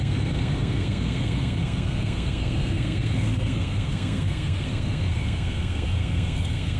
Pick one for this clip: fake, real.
fake